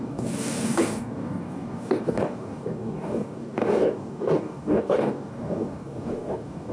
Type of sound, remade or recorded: remade